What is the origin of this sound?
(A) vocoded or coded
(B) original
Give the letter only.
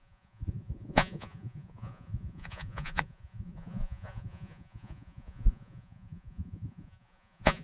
A